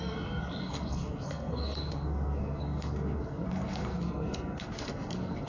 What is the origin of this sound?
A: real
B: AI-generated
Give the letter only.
B